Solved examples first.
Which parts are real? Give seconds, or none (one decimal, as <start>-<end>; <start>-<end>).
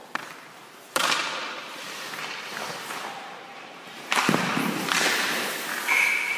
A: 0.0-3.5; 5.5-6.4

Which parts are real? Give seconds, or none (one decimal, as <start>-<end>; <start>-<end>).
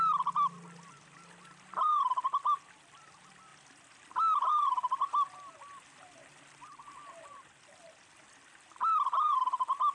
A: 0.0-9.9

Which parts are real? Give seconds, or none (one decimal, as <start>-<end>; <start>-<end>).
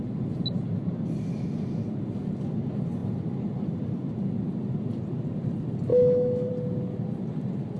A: 0.0-5.9; 6.5-7.8